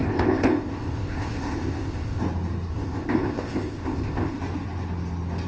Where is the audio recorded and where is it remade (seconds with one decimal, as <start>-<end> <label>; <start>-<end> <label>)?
0.0-2.2 remade; 2.2-2.7 recorded; 2.7-4.4 remade; 4.4-5.5 recorded